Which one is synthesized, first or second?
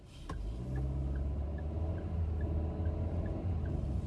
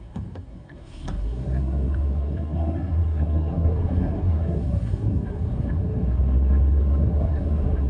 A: second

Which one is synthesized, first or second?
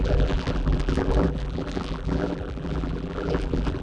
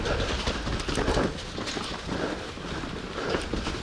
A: first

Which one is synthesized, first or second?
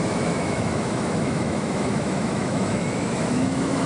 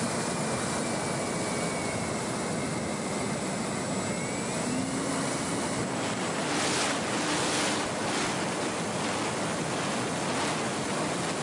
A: first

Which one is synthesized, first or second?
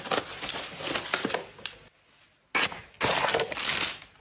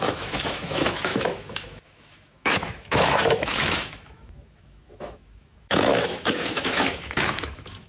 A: second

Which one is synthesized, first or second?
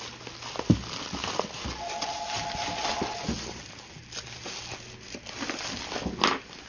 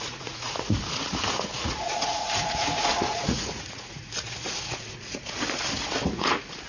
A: second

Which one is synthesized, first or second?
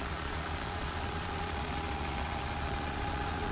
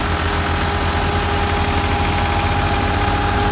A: first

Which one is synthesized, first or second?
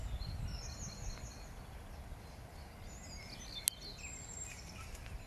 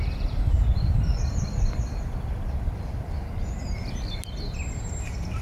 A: second